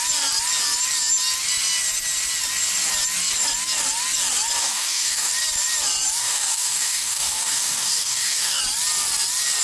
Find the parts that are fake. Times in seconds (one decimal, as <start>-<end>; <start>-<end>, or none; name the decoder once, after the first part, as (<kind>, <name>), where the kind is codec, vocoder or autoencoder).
4.6-5.3 (codec, DAC); 6.2-8.6